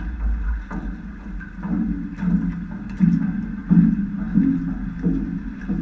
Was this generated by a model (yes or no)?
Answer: no